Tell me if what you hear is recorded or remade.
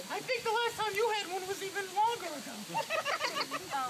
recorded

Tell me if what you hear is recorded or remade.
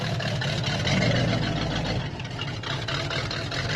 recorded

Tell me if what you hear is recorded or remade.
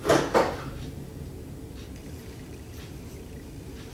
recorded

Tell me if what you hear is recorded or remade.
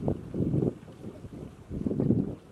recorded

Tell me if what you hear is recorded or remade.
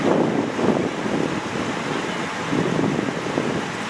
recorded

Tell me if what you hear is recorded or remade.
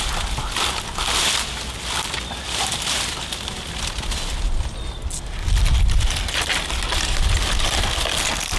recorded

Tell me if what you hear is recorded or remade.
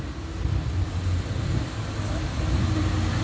recorded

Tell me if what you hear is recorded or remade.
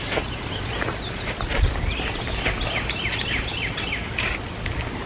remade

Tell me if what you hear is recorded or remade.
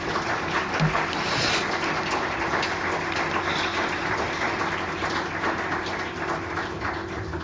recorded